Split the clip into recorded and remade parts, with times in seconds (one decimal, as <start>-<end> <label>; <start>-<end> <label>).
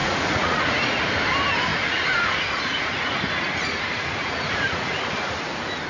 0.0-1.1 remade; 1.1-1.7 recorded; 1.7-5.2 remade; 5.2-5.9 recorded